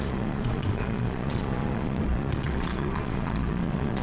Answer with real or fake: fake